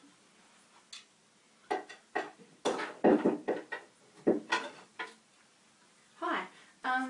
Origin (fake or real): real